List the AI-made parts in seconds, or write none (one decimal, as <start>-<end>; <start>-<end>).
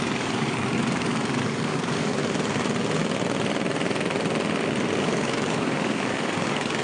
0.0-2.2; 5.0-6.8